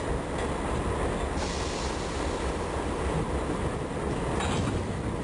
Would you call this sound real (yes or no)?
yes